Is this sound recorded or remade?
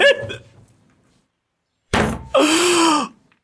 remade